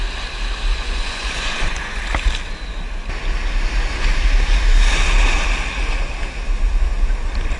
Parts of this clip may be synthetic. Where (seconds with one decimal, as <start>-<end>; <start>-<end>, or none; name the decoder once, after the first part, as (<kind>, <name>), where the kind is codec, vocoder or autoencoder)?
0.7-2.0 (vocoder, Vocos)